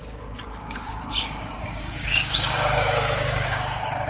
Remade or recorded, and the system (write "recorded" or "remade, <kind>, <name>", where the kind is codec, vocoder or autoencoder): remade, codec, DAC